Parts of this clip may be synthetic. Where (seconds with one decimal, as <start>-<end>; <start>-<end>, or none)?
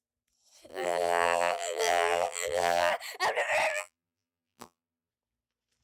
0.7-2.9; 3.7-5.1